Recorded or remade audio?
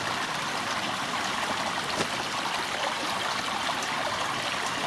recorded